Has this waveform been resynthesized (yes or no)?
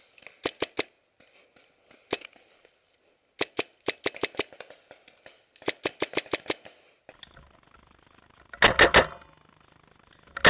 no